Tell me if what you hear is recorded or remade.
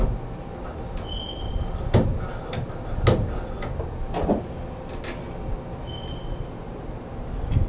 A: recorded